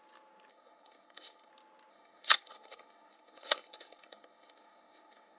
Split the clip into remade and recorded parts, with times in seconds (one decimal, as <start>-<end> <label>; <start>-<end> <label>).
0.0-0.5 recorded; 0.5-1.5 remade; 1.5-1.9 recorded; 1.9-5.4 remade

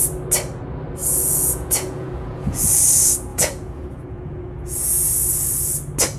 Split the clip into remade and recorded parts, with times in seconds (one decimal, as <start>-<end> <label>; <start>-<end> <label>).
0.0-1.0 recorded; 1.0-2.8 remade; 2.8-3.3 recorded; 3.3-5.1 remade; 5.1-6.2 recorded